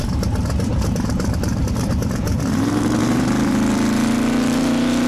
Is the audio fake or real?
fake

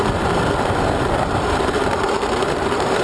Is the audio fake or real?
fake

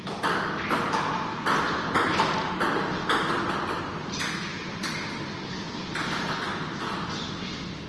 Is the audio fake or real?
real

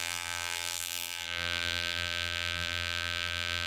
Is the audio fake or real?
fake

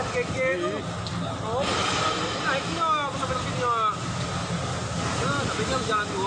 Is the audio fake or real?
real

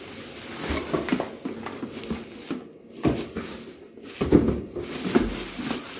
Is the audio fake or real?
real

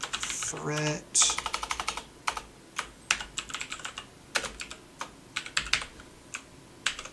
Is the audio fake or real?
real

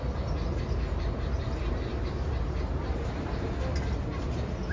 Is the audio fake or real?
real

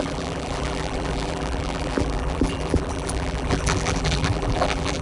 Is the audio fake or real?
fake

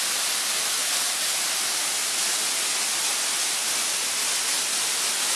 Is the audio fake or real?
real